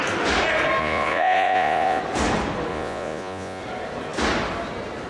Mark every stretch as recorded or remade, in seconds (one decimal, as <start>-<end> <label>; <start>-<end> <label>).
0.0-0.8 recorded; 0.8-2.0 remade; 2.0-2.7 recorded; 2.7-3.6 remade; 3.6-5.1 recorded